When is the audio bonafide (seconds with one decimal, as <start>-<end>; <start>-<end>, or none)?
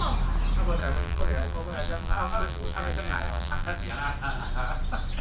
0.0-0.8; 3.9-5.2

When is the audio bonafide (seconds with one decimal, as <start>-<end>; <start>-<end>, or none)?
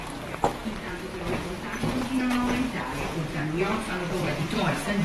0.0-4.2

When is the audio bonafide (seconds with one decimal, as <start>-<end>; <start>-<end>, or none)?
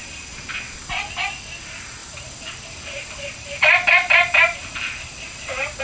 0.0-2.0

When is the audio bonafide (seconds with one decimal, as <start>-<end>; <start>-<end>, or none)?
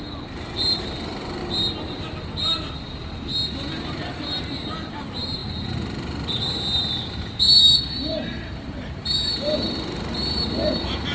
1.4-4.4; 5.4-6.4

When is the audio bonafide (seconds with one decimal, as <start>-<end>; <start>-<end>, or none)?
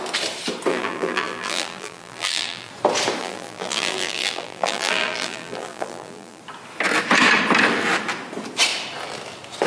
0.0-0.7; 2.7-3.2; 6.4-9.7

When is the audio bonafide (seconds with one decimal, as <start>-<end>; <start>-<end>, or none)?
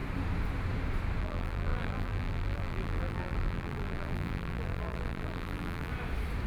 0.0-1.2; 5.9-6.5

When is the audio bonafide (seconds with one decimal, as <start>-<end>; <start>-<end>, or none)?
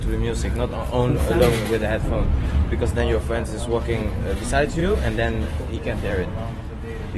0.0-1.0; 2.8-4.8; 6.6-7.2